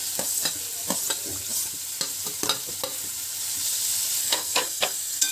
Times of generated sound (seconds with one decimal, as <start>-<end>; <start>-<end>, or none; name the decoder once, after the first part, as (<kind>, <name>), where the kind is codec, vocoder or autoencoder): 4.2-5.3 (codec, SNAC)